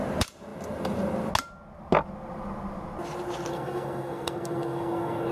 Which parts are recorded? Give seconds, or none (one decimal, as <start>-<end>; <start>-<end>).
0.0-3.5